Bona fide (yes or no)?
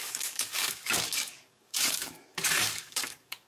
no